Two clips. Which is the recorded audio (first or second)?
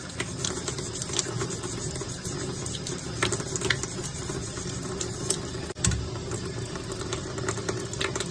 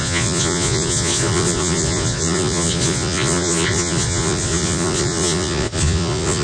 first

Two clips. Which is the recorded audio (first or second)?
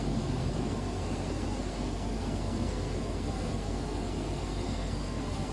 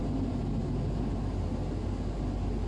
second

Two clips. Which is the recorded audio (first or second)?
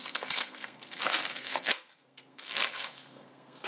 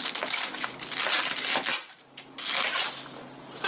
second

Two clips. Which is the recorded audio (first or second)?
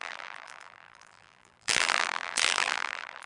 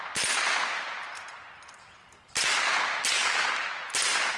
second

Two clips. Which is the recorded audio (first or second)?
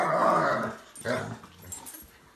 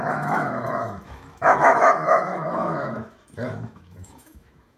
first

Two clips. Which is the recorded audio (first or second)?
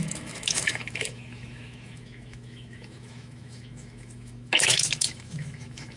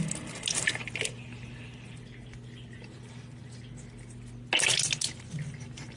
second